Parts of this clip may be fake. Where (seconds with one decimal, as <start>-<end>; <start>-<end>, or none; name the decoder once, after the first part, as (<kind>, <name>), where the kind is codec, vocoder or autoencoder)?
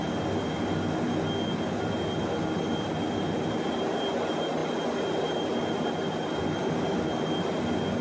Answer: none